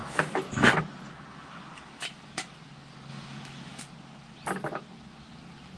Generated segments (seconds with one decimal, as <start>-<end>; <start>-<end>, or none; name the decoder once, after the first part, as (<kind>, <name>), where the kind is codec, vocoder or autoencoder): 0.0-0.8 (autoencoder, DAC-VAE); 1.3-2.4; 3.1-3.8